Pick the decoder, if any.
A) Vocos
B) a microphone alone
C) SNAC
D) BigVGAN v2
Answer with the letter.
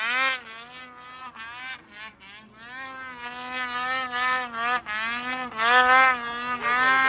B